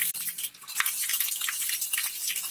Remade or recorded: recorded